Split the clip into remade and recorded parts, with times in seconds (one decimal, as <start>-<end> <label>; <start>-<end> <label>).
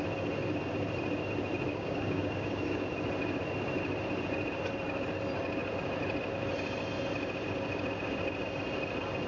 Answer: 0.0-1.7 recorded; 1.7-2.9 remade; 2.9-9.3 recorded